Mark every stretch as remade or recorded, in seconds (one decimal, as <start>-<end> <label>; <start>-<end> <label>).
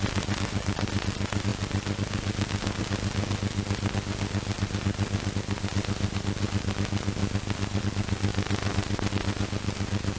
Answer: 0.0-1.5 remade; 1.5-5.3 recorded; 5.3-7.2 remade; 7.2-7.8 recorded; 7.8-10.2 remade